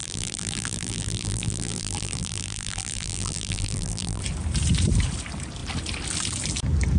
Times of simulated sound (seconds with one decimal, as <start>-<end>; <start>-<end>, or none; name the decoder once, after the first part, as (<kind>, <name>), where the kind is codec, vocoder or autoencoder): 0.0-4.2 (vocoder, BigVGAN v2)